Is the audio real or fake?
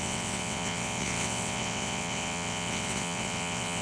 fake